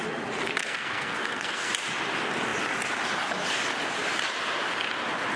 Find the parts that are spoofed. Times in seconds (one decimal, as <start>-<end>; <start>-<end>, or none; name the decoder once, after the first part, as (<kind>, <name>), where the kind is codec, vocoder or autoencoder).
0.6-1.7 (codec, SNAC)